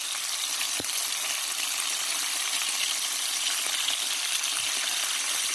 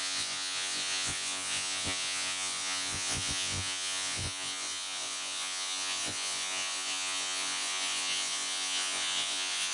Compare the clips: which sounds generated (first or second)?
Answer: second